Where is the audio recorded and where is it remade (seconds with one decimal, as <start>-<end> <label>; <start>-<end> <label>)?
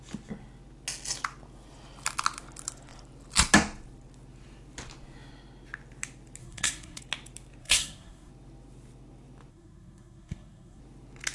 0.0-6.4 recorded; 6.4-7.0 remade; 7.0-7.6 recorded; 7.6-8.3 remade; 8.3-9.5 recorded; 9.5-10.8 remade; 10.8-11.3 recorded